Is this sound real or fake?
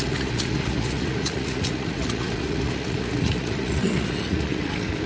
fake